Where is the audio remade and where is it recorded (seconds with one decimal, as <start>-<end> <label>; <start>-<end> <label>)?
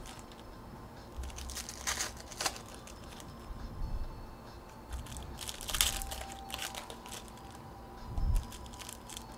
0.0-9.4 recorded